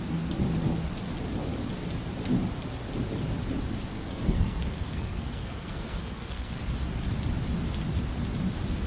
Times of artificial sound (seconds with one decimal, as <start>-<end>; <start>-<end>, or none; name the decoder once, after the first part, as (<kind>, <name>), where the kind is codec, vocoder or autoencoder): 3.9-6.6 (codec, SNAC)

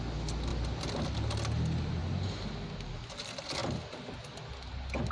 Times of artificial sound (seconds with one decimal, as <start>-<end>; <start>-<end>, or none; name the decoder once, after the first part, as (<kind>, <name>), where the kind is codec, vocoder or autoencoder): none

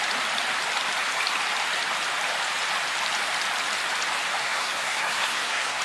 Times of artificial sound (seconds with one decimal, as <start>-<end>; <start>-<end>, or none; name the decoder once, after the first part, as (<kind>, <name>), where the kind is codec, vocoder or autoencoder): 4.4-5.8 (codec, SNAC)

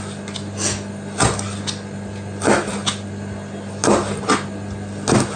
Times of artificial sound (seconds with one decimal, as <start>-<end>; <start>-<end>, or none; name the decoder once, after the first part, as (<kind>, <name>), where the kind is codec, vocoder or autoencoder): none

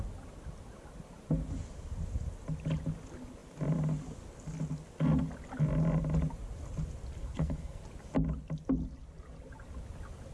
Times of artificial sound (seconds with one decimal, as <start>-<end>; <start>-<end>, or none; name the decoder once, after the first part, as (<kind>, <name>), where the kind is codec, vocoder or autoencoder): 7.2-7.8 (codec, SNAC)

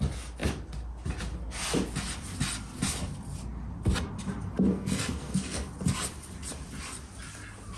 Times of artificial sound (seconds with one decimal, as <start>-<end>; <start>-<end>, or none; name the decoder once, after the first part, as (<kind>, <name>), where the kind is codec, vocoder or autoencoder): 4.7-5.7 (codec, SNAC)

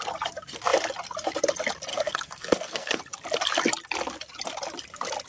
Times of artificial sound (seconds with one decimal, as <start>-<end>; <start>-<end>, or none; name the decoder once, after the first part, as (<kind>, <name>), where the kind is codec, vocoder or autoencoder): 1.9-3.0 (codec, SNAC)